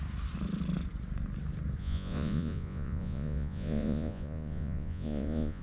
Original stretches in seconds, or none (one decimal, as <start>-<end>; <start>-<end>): 0.0-1.8